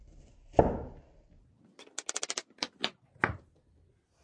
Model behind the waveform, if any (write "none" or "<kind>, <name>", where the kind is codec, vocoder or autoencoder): none